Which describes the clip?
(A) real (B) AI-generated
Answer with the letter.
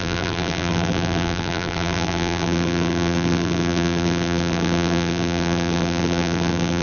B